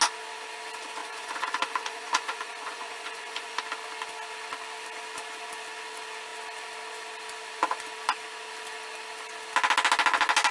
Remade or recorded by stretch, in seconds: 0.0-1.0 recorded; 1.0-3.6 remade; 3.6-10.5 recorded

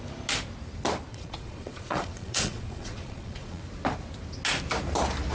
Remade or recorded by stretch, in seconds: 0.0-1.1 recorded; 1.1-3.6 remade; 3.6-5.3 recorded

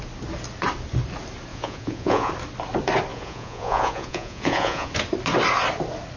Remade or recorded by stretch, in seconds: 0.0-1.5 recorded; 1.5-2.3 remade; 2.3-3.1 recorded; 3.1-4.9 remade; 4.9-6.2 recorded